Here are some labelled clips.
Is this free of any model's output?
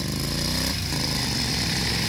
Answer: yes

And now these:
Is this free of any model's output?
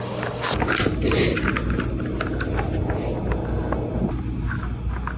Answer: yes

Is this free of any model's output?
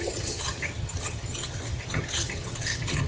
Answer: no